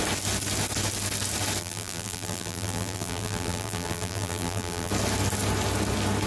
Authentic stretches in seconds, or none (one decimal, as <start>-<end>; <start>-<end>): 0.0-1.6; 4.9-6.3